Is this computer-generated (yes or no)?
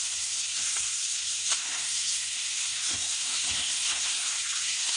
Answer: yes